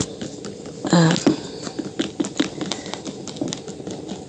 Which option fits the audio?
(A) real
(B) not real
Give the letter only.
A